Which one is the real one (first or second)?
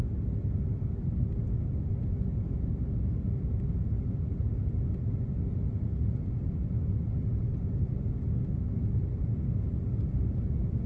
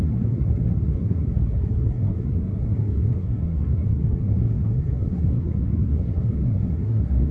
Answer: first